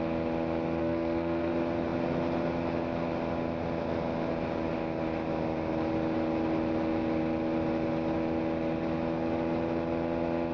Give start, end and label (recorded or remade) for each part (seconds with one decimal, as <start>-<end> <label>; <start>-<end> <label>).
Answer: 0.0-0.8 recorded; 0.8-1.5 remade; 1.5-10.5 recorded